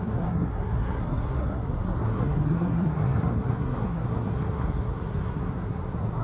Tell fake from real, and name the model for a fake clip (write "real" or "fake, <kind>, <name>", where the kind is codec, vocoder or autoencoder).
fake, codec, SNAC